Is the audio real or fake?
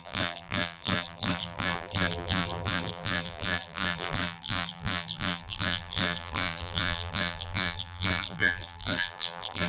fake